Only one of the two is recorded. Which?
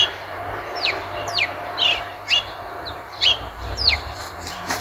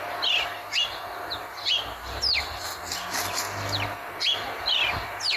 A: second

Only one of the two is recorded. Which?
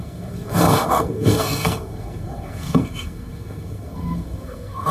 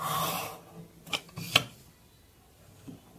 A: second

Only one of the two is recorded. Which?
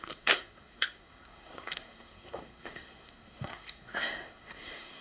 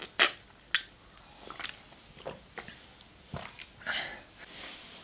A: second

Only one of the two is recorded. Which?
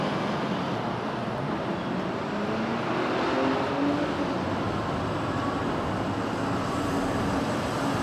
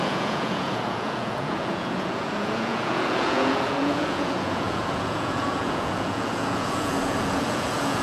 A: first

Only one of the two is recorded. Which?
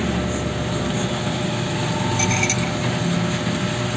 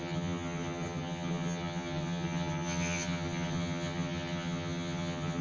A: first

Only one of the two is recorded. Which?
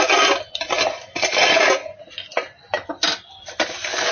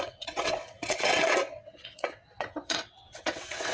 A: first